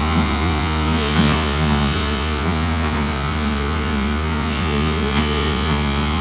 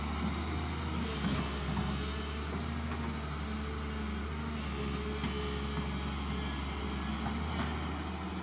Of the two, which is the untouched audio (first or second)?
second